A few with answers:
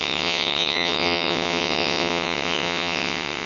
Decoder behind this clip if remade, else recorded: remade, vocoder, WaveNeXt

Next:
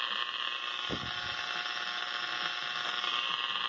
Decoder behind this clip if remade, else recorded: recorded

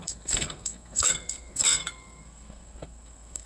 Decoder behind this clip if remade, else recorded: remade, codec, SNAC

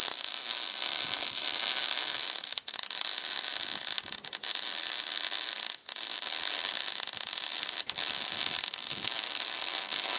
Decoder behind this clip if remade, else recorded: recorded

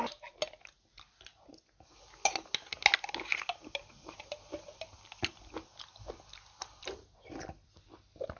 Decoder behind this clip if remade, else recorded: recorded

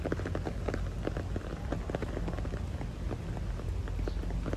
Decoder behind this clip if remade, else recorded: recorded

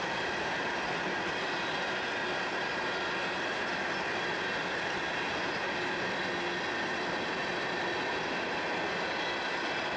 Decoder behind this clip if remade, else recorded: recorded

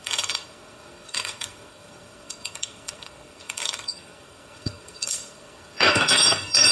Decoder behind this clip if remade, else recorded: remade, codec, SNAC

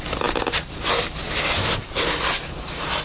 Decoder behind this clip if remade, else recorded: recorded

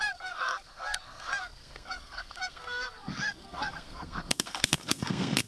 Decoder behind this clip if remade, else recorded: remade, codec, SNAC